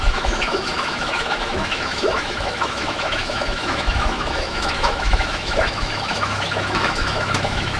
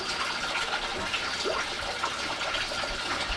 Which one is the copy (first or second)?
first